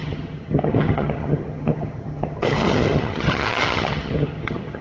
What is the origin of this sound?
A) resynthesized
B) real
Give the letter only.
A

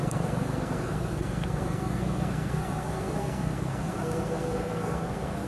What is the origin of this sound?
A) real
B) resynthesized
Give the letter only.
B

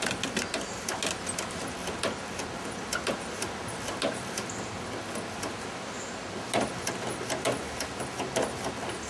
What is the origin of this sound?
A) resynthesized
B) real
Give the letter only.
B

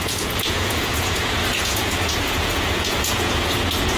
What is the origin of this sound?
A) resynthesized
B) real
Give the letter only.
A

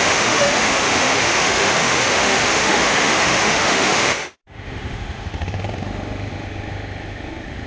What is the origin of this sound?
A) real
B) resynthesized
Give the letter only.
B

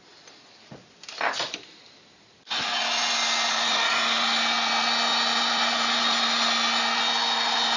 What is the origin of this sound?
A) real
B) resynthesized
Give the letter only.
A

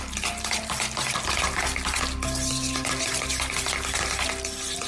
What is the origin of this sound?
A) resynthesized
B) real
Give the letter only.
B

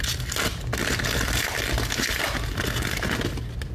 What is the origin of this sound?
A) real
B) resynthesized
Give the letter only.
A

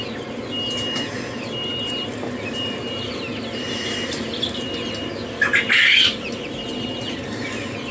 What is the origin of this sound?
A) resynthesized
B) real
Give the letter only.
B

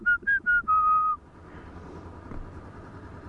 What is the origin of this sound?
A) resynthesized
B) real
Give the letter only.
B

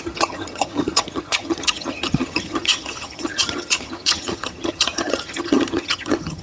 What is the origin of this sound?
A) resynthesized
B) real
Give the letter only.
A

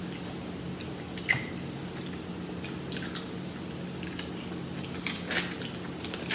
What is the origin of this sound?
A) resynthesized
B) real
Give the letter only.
B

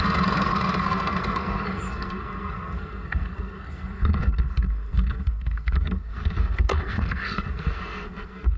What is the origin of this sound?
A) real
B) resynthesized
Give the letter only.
B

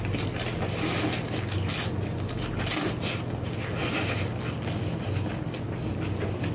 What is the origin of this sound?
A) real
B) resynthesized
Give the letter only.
A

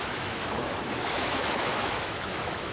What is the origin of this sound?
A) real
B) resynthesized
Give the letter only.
B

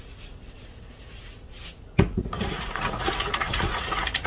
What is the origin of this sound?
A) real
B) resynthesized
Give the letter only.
B